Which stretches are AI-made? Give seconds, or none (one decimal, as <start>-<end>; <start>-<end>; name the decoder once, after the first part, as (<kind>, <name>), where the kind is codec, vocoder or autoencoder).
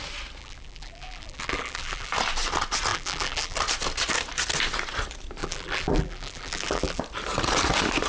0.4-2.1 (vocoder, BigVGAN v2); 2.9-3.6; 5.4-7.0